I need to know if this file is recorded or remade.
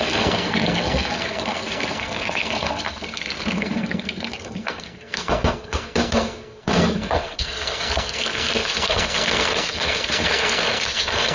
remade